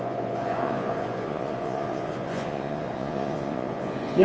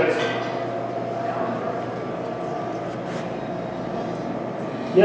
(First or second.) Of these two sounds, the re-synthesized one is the first